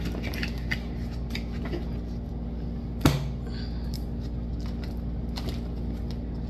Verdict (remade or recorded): recorded